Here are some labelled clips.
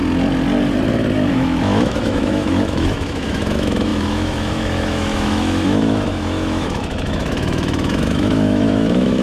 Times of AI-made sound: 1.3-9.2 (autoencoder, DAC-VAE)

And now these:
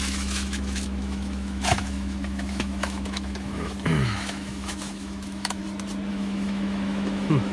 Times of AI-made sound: 0.0-5.6 (autoencoder, DAC-VAE); 6.1-7.5

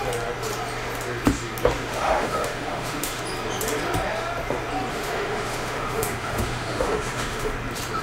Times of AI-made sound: 1.9-3.2 (autoencoder, DAC-VAE); 4.9-7.5

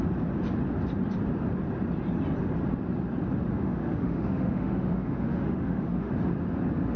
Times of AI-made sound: 3.5-6.1 (autoencoder, DAC-VAE)

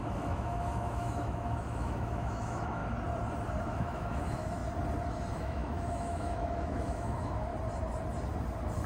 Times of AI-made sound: 0.0-2.8 (autoencoder, DAC-VAE); 3.6-4.6; 5.3-7.5